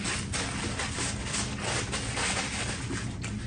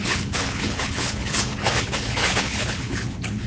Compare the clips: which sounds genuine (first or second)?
first